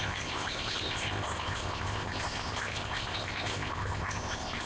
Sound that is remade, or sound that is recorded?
remade